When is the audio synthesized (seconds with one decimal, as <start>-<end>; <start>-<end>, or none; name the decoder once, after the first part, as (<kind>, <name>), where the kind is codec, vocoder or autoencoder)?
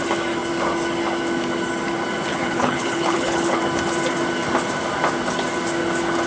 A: 2.3-3.6 (codec, HILCodec)